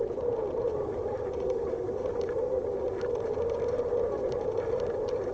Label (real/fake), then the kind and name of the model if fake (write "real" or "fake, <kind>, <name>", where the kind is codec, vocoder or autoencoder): real